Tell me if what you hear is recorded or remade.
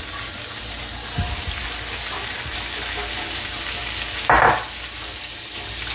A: recorded